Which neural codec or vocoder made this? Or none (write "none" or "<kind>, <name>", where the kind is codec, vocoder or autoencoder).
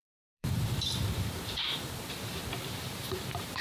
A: vocoder, BigVGAN v2